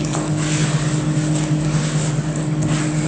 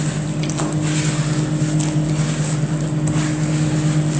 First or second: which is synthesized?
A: first